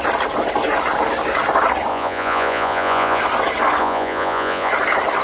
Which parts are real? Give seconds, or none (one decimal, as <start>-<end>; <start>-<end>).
0.0-1.9; 3.2-3.8; 4.7-5.2

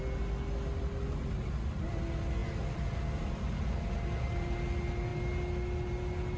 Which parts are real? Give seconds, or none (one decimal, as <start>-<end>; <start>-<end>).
0.0-6.4

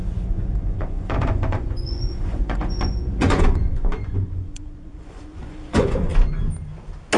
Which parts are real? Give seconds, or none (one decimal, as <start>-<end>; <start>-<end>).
6.1-7.2

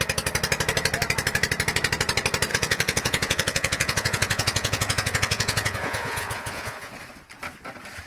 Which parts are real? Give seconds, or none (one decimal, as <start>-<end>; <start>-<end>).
0.0-2.5; 6.9-8.1

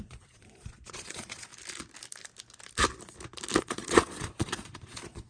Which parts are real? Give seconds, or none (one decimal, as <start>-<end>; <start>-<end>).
1.5-3.6

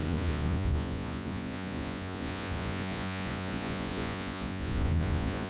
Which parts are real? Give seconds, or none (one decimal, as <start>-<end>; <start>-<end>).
none

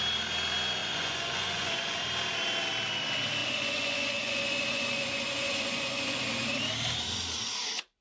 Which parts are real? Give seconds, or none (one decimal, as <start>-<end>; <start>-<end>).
0.0-0.8; 2.0-3.4; 6.2-8.0